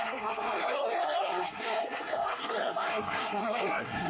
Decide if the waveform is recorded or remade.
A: remade